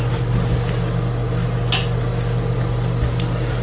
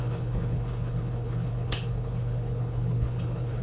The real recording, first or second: first